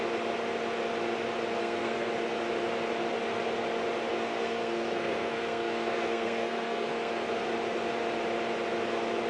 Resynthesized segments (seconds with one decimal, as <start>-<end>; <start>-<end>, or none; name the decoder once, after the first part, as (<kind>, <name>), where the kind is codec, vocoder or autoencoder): 1.6-2.1 (codec, SNAC); 4.1-7.3